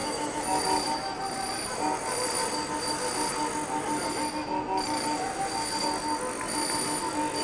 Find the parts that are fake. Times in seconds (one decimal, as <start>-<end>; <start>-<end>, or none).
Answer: 0.0-0.6